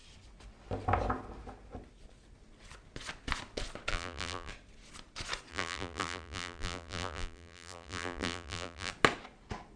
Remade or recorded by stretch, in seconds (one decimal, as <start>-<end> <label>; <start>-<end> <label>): 0.0-3.9 recorded; 3.9-4.5 remade; 4.5-5.5 recorded; 5.5-8.9 remade; 8.9-9.8 recorded